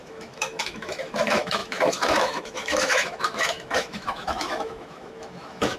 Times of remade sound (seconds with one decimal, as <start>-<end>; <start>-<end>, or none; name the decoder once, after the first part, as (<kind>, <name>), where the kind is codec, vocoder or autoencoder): 0.0-5.8 (autoencoder, DAC-VAE)